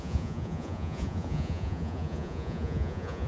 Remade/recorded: remade